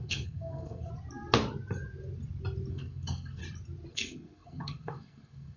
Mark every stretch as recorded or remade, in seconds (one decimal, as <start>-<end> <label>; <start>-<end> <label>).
0.0-0.9 remade; 0.9-2.7 recorded; 2.7-3.4 remade; 3.4-3.9 recorded; 3.9-5.6 remade